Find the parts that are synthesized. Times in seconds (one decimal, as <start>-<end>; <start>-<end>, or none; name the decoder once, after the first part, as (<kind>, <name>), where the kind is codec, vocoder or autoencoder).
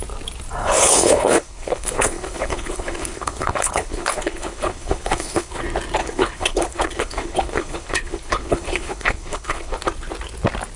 0.6-5.6 (codec, HILCodec); 6.0-9.8